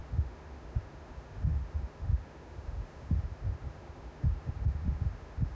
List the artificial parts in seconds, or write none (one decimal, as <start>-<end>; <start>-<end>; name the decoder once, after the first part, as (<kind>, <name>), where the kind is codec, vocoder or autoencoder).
0.0-5.5 (autoencoder, DAC-VAE)